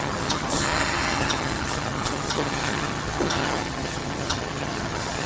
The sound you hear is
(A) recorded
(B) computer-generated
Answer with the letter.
B